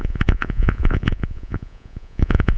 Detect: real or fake fake